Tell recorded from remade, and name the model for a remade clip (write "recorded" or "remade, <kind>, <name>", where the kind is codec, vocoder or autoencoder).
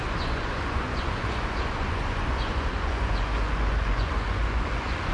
remade, vocoder, Vocos